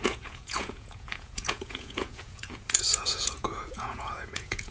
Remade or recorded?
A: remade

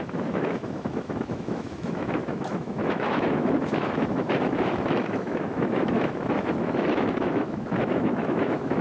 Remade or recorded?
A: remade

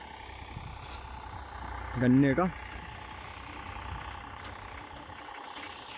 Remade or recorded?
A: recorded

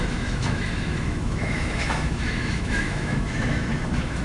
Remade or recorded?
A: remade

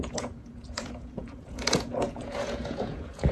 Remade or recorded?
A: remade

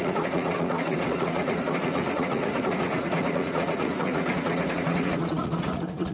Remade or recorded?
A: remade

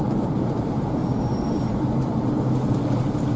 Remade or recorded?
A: remade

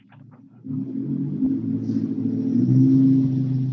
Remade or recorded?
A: recorded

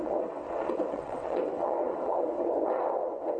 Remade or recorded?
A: remade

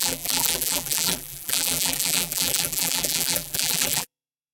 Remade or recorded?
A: remade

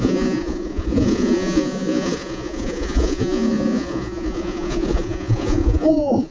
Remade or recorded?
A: remade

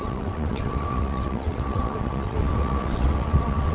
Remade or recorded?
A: remade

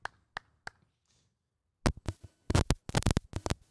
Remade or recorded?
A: recorded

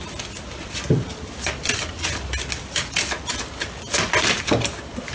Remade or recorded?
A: recorded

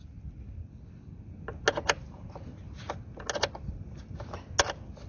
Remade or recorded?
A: recorded